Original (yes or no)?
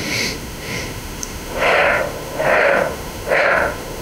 no